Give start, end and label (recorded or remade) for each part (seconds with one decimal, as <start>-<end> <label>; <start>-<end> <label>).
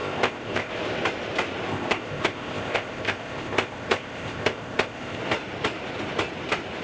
0.0-0.7 remade; 0.7-1.7 recorded; 1.7-5.2 remade; 5.2-6.8 recorded